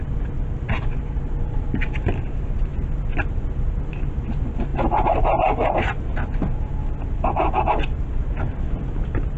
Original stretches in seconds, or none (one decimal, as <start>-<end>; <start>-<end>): 0.0-9.4